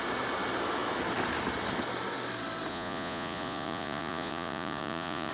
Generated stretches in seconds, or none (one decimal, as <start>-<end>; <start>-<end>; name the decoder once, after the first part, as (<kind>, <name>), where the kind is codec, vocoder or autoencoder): 2.7-5.3 (vocoder, Vocos)